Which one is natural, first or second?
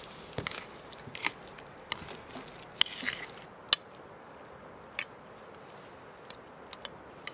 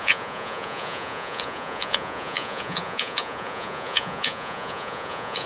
first